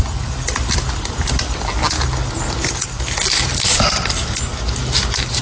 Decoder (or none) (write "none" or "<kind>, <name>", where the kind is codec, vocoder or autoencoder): none